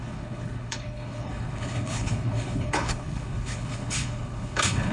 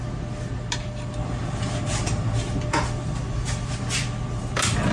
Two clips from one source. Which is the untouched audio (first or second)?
second